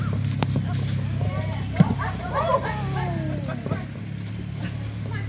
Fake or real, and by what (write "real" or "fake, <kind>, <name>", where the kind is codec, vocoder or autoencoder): real